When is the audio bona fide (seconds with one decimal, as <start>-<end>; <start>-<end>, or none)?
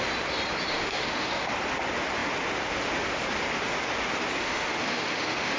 0.0-0.7; 1.5-4.4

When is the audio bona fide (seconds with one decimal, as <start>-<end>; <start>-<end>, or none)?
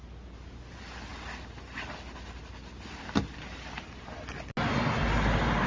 0.0-5.7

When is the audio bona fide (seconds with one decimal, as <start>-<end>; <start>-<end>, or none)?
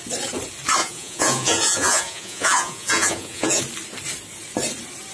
0.0-0.8; 3.6-5.1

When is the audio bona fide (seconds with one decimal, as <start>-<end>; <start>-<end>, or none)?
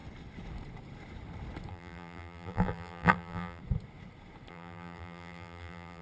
0.0-1.7; 3.6-4.5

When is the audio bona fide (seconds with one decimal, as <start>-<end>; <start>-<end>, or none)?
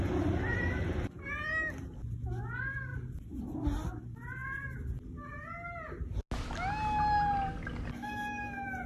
0.0-2.9; 3.6-8.9